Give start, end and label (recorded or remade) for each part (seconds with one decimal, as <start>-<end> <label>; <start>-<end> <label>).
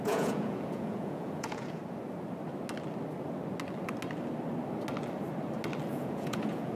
0.0-1.8 remade; 1.8-5.9 recorded; 5.9-6.8 remade